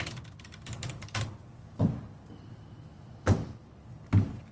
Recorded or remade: recorded